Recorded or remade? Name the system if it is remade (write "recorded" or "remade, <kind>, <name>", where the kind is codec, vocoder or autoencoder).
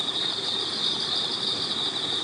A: recorded